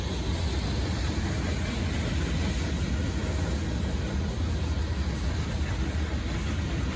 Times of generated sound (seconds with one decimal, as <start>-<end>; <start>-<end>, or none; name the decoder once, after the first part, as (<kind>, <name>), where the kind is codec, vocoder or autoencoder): none